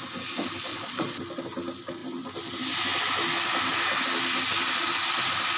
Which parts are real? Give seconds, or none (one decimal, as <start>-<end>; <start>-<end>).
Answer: 0.0-0.7; 1.2-5.6